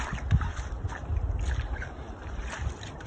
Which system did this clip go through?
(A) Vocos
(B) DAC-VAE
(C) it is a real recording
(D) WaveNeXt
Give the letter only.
C